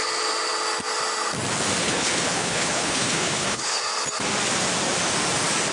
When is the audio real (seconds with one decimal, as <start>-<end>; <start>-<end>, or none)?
0.0-1.8; 3.8-5.7